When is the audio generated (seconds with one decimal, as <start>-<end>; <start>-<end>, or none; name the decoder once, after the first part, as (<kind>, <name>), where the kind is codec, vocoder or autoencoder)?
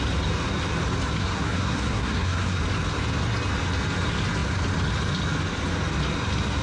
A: 1.2-2.6 (codec, SNAC)